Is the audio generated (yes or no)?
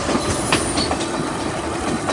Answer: no